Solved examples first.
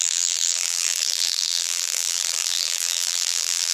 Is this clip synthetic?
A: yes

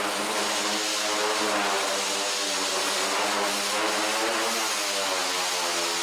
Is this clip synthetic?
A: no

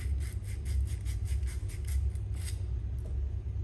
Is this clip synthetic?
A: no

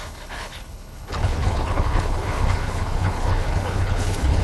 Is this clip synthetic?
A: yes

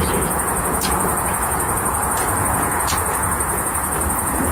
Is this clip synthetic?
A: yes